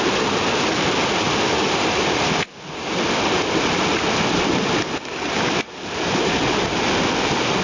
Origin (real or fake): real